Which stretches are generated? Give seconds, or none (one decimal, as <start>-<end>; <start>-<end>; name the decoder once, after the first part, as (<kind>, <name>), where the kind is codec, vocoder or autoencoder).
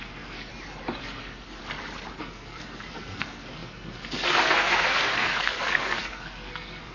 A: 0.0-0.5 (codec, SNAC); 1.0-1.6; 2.2-6.9